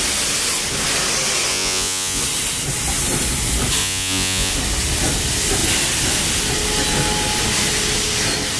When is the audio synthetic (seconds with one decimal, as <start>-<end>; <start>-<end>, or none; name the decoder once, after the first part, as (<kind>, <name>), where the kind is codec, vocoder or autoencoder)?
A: 1.5-2.2 (vocoder, Vocos); 3.8-4.5